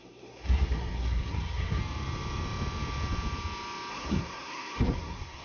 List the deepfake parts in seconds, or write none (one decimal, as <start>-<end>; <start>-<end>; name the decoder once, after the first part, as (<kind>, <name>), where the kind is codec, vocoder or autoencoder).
0.0-1.8 (codec, SNAC); 3.9-5.4